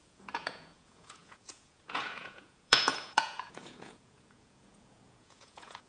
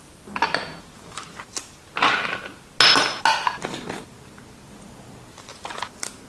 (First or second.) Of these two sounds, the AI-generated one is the first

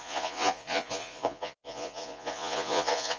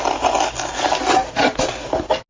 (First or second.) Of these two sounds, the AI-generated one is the first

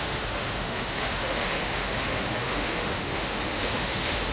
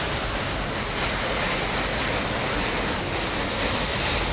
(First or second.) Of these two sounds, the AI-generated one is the first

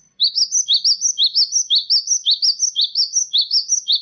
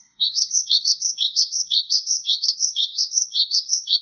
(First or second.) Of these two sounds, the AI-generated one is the second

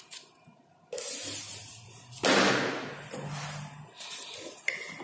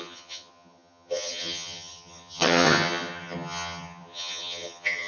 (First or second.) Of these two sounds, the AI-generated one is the second